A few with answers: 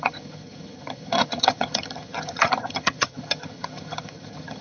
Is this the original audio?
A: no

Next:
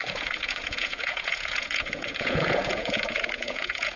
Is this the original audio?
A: no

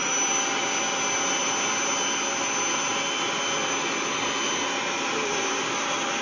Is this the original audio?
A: yes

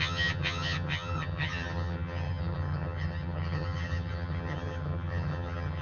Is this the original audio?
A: no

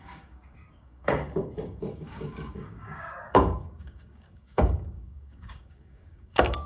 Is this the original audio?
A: no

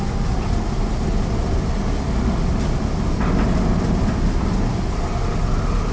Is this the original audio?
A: yes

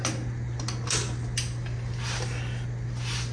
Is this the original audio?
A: yes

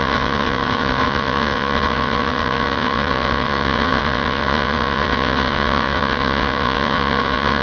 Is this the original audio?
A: no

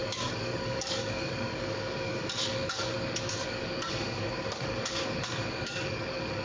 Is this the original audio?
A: no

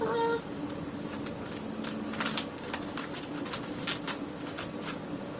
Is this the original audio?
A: yes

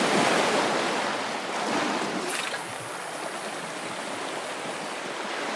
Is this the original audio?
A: yes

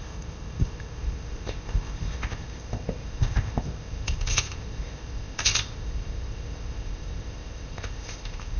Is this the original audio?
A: no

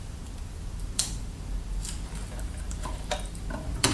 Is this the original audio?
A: no